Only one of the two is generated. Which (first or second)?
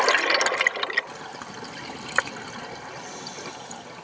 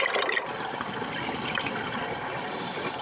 second